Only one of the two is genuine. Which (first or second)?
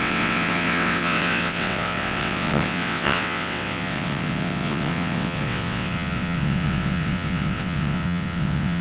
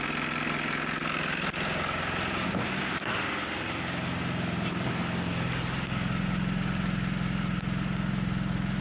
second